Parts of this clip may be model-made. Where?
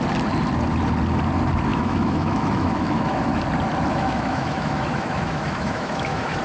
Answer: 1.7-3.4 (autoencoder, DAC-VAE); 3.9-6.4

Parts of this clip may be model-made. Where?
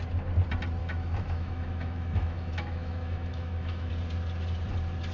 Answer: 0.8-3.9 (autoencoder, DAC-VAE)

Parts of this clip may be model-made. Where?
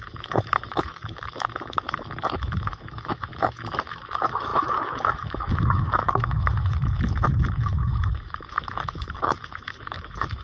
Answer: 0.0-10.4 (autoencoder, DAC-VAE)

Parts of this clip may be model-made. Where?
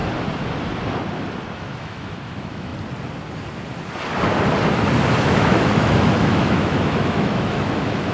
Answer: 1.5-2.7 (autoencoder, DAC-VAE); 5.2-8.1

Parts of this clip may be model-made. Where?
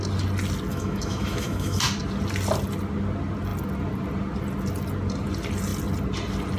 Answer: 0.7-1.8 (autoencoder, DAC-VAE)